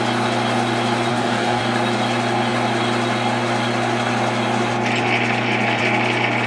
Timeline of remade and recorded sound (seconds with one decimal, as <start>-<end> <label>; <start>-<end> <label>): 0.0-1.1 recorded; 1.1-1.6 remade; 1.6-6.5 recorded

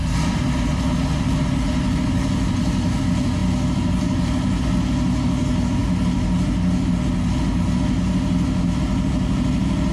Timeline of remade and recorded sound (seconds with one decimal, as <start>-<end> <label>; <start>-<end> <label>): 0.0-9.9 recorded

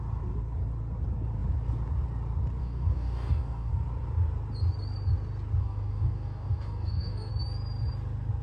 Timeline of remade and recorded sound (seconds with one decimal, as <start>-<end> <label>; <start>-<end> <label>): 0.0-2.6 recorded; 2.6-3.7 remade; 3.7-5.6 recorded; 5.6-7.3 remade; 7.3-8.4 recorded